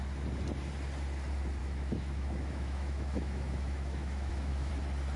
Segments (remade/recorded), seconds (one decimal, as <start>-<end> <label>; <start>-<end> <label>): 0.0-1.6 recorded; 1.6-4.7 remade; 4.7-5.2 recorded